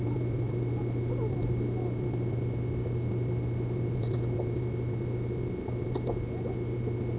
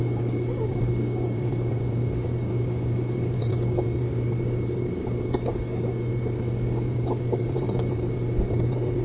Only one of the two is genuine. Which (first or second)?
first